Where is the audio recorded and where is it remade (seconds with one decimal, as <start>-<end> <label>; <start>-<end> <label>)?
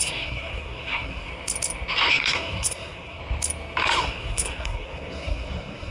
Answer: 0.0-1.3 remade; 1.3-2.1 recorded; 2.1-3.2 remade; 3.2-4.0 recorded; 4.0-5.9 remade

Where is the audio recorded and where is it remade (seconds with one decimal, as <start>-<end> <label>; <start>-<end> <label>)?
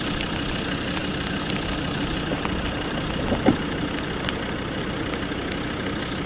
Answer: 0.0-6.3 recorded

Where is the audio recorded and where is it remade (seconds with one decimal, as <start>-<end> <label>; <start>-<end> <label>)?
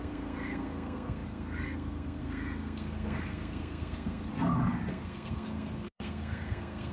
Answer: 0.0-4.3 remade; 4.3-4.9 recorded; 4.9-6.9 remade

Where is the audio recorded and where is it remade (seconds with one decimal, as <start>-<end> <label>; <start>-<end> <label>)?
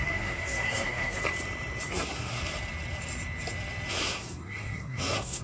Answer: 0.0-1.2 remade; 1.2-1.9 recorded; 1.9-2.4 remade; 2.4-3.9 recorded; 3.9-5.4 remade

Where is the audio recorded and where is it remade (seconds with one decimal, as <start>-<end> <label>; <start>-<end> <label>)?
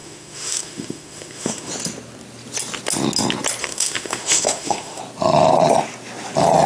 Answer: 0.0-1.7 remade; 1.7-3.6 recorded; 3.6-5.0 remade; 5.0-6.7 recorded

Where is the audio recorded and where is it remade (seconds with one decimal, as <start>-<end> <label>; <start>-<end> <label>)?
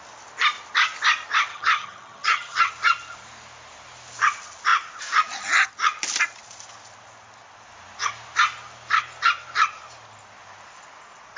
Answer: 0.0-1.5 recorded; 1.5-2.7 remade; 2.7-11.4 recorded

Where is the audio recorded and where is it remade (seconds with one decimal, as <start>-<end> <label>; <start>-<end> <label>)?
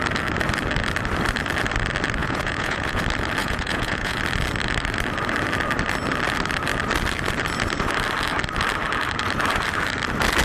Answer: 0.0-2.2 recorded; 2.2-3.0 remade; 3.0-3.4 recorded; 3.4-4.2 remade; 4.2-10.4 recorded